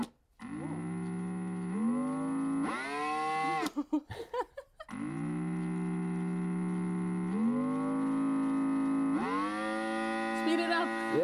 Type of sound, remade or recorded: recorded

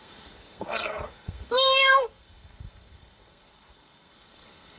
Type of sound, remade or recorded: remade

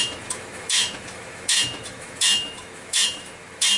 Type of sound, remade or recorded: remade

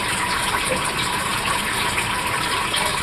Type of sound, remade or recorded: remade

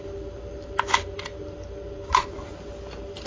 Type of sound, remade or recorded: recorded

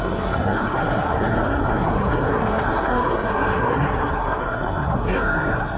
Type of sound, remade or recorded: remade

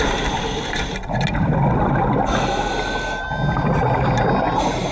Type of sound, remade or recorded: recorded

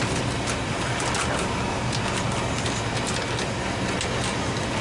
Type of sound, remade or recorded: recorded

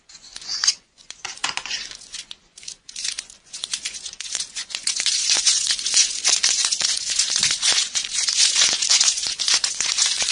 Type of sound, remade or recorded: remade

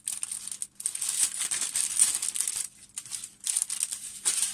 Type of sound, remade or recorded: recorded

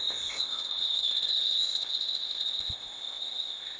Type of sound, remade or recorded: remade